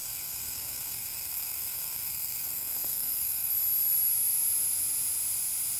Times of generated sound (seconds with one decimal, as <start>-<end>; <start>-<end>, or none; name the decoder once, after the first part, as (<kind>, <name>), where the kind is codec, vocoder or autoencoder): 0.0-3.5 (codec, SNAC)